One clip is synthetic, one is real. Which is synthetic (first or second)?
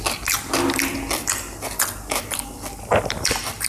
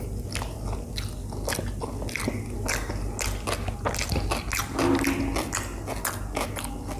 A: first